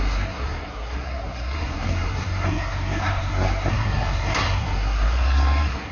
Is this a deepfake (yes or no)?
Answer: yes